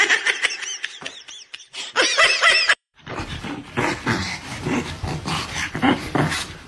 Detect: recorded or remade remade